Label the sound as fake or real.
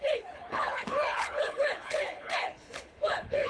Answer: fake